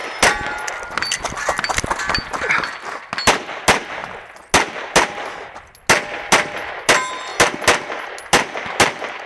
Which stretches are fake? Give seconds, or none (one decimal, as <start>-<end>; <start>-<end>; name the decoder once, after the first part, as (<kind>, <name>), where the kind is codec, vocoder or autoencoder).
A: none